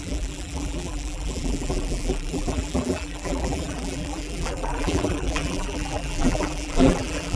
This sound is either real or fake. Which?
fake